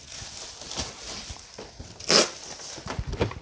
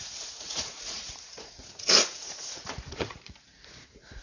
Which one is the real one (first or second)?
first